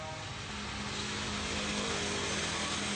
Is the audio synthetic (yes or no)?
no